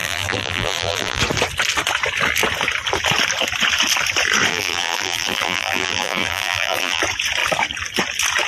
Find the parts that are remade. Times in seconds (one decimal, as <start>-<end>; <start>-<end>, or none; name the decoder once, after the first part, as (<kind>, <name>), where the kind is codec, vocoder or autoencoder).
0.0-1.2 (vocoder, BigVGAN v2); 4.5-7.0